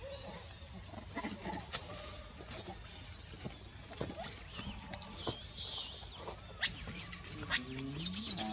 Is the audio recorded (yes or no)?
yes